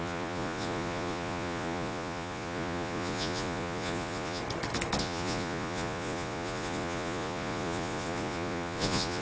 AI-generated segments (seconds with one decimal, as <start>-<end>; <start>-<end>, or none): 0.0-4.4; 5.0-9.2